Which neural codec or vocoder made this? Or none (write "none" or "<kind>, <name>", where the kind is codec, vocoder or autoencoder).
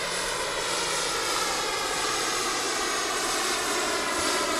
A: none